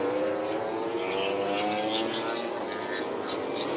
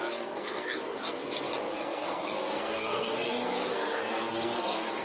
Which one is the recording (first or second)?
first